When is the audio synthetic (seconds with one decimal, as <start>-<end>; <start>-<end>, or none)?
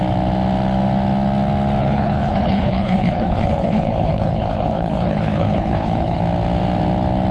1.8-6.2